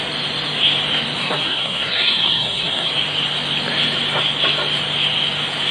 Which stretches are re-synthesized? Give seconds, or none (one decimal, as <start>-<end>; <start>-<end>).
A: 1.2-2.9